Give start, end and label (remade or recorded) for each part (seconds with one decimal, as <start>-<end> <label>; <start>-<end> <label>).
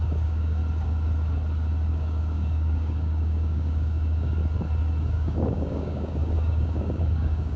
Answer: 0.0-0.6 remade; 0.6-1.9 recorded; 1.9-4.4 remade; 4.4-5.0 recorded; 5.0-7.6 remade